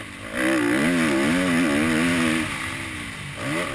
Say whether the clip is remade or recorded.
recorded